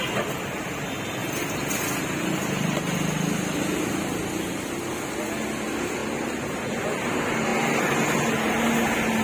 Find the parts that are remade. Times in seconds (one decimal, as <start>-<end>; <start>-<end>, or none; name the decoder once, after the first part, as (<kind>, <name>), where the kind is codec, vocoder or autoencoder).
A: none